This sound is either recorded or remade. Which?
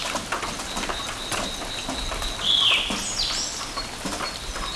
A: recorded